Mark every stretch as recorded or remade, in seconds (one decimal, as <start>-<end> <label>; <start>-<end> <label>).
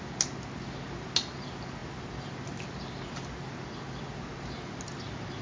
0.0-5.4 recorded